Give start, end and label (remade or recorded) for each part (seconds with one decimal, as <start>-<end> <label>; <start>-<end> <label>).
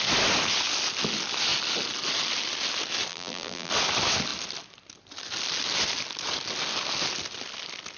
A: 0.0-3.1 recorded; 3.1-3.7 remade; 3.7-8.0 recorded